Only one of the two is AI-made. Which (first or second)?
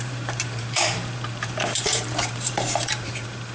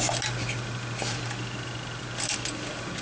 first